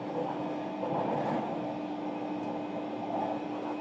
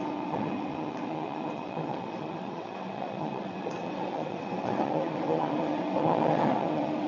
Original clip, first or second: first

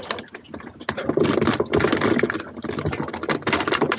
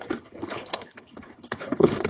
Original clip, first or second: first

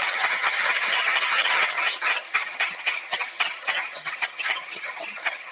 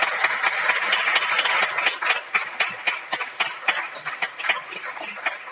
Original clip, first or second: second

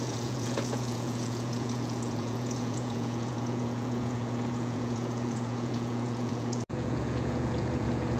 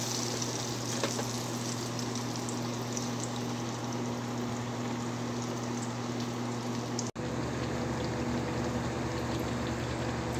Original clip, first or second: second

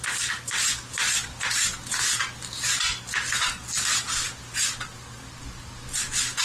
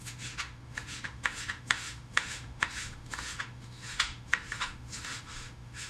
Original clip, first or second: first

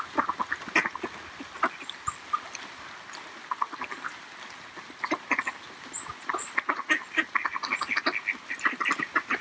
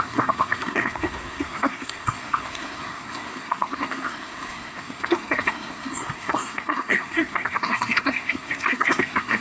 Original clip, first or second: first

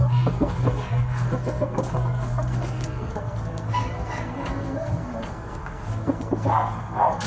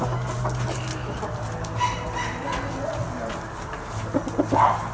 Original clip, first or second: second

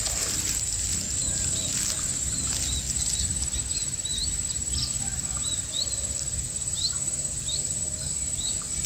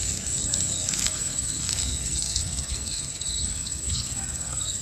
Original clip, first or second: first